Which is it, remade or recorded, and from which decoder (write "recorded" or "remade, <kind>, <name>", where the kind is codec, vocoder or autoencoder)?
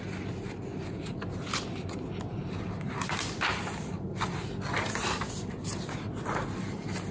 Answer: recorded